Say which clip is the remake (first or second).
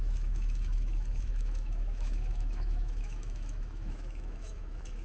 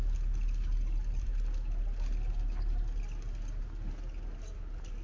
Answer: first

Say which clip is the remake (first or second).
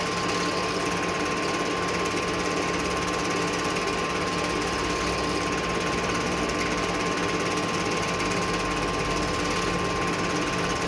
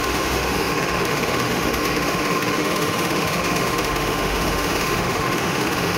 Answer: second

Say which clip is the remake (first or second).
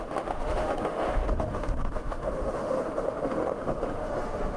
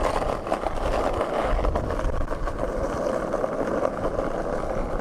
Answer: first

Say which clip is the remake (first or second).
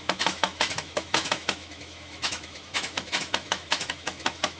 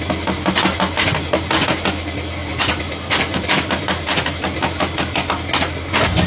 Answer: first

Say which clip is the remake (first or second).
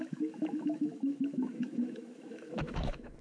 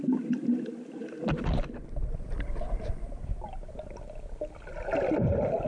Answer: first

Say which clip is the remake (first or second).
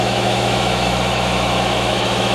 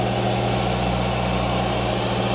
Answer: first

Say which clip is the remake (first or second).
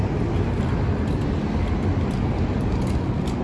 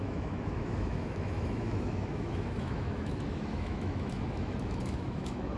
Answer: second